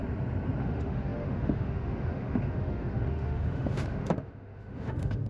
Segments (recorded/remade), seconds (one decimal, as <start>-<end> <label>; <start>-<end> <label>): 0.0-0.6 recorded; 0.6-5.3 remade